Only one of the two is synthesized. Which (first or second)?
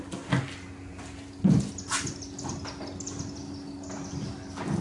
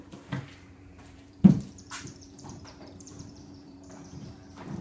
second